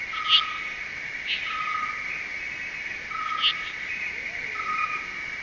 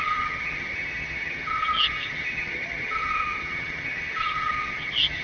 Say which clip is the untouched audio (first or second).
first